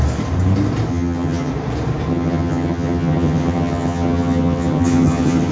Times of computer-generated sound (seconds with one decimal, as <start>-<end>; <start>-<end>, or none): 0.9-1.5; 2.1-5.5